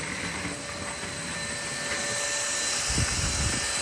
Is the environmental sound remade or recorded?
recorded